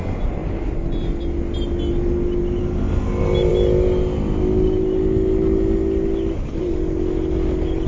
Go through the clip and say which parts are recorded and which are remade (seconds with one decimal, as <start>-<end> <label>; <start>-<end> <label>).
0.0-7.9 recorded